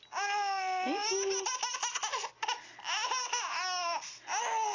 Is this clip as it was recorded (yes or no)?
yes